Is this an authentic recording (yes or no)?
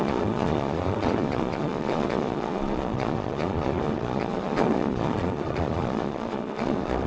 no